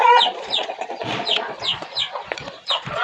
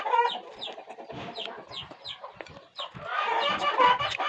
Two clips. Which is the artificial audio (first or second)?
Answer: first